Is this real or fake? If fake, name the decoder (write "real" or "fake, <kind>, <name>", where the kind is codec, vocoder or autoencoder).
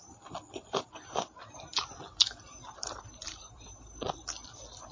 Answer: fake, vocoder, BigVGAN v2